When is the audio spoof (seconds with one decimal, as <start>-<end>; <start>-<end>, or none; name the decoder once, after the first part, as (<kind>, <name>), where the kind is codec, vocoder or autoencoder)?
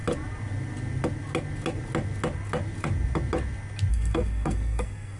3.9-5.2 (codec, SNAC)